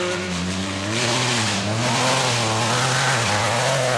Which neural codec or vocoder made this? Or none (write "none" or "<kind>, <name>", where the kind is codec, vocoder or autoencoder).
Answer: none